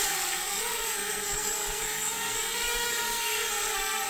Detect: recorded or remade remade